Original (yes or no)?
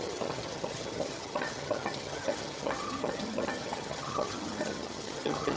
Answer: no